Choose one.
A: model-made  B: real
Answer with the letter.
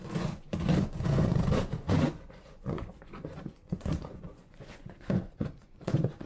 A